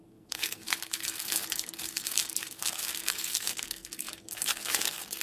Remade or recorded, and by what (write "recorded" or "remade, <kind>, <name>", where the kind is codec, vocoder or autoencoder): remade, codec, SNAC